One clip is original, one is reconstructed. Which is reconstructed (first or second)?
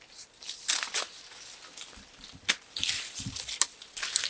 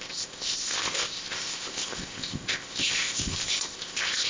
second